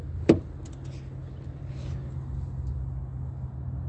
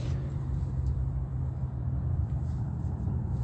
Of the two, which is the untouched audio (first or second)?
first